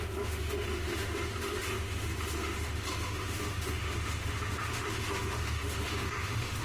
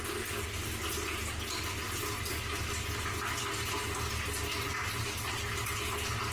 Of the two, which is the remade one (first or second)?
first